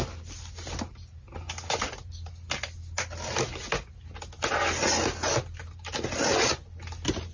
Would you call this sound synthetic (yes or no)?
no